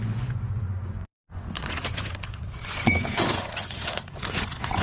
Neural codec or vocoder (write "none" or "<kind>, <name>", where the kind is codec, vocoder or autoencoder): vocoder, Vocos